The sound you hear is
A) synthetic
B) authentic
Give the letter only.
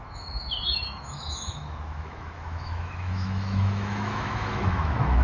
A